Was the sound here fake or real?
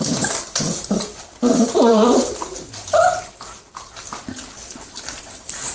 fake